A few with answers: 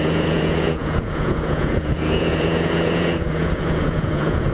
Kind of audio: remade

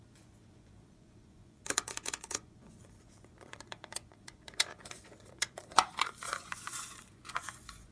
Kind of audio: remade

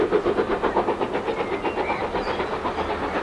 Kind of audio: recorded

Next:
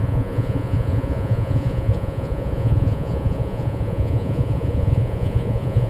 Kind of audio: remade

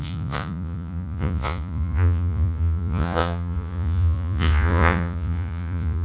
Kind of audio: remade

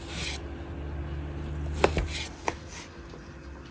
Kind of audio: recorded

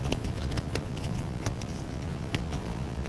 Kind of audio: remade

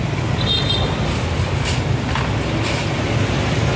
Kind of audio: recorded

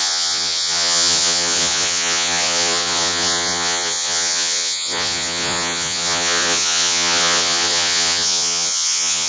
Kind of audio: remade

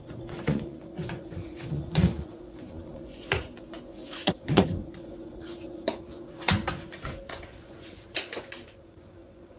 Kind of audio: remade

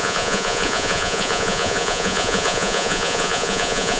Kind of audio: remade